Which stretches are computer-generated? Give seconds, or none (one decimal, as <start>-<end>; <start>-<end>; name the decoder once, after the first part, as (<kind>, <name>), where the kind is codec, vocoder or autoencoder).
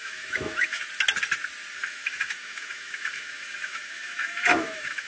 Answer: 0.0-0.8 (autoencoder, DAC-VAE); 1.8-5.1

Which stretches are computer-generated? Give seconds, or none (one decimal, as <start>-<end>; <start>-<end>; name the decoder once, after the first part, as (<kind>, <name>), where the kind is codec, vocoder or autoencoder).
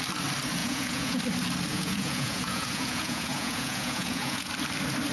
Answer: 0.6-1.2 (vocoder, Vocos); 1.7-4.5